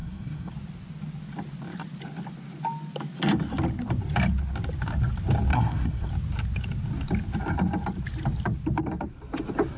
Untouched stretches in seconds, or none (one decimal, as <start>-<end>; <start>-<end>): 0.5-5.5; 6.1-9.8